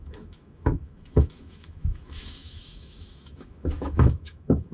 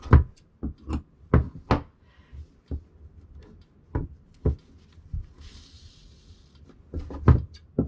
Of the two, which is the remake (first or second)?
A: first